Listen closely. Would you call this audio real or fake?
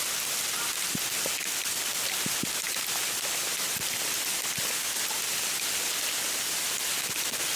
real